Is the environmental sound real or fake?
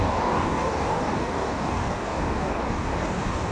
fake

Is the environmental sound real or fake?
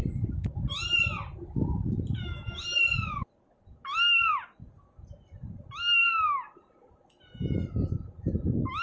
real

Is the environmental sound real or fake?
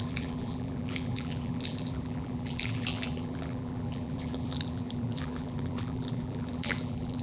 fake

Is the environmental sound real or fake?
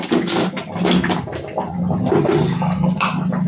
real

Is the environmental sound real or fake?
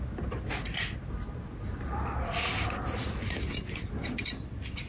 real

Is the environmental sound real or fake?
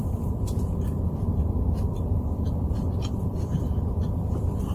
fake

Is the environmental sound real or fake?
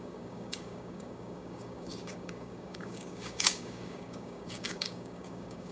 fake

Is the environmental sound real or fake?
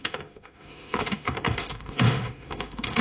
fake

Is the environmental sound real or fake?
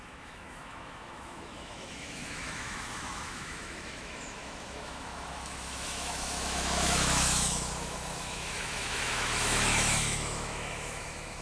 fake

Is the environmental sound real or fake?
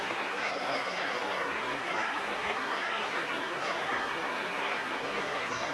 fake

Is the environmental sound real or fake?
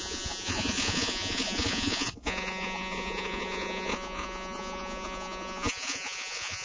fake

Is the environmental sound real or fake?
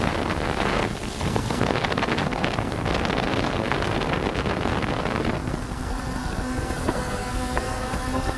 fake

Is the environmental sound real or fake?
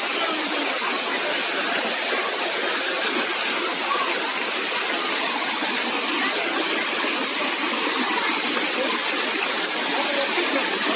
real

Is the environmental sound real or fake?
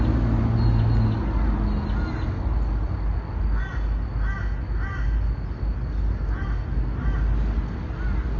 real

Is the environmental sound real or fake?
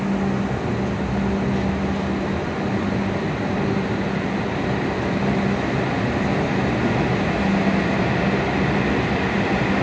real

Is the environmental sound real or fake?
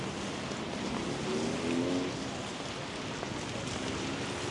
real